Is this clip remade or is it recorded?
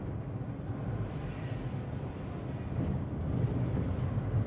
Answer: recorded